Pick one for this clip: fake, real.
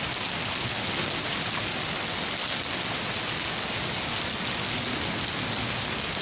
real